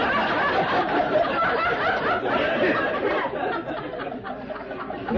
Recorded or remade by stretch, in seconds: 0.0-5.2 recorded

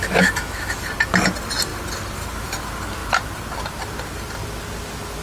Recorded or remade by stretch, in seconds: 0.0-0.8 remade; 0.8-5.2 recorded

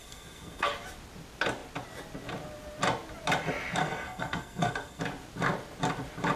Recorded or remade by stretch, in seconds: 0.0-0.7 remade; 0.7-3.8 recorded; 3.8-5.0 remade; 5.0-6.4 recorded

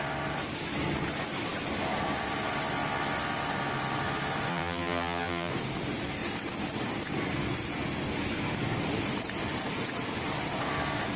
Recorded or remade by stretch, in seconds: 0.0-4.5 recorded; 4.5-5.5 remade; 5.5-11.2 recorded